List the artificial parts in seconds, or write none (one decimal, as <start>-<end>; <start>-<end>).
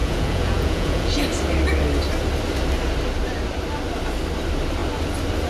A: 0.0-1.1